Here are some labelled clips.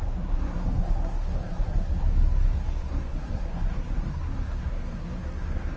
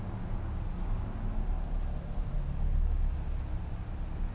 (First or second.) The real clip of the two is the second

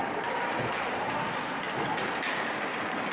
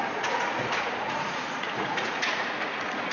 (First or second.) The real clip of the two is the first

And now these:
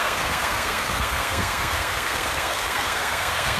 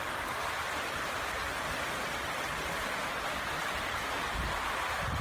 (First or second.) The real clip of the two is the second